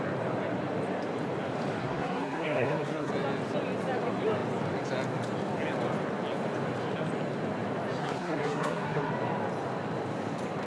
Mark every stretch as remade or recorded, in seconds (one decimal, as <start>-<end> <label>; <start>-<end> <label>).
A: 0.0-1.8 recorded; 1.8-3.1 remade; 3.1-8.0 recorded; 8.0-9.1 remade; 9.1-10.7 recorded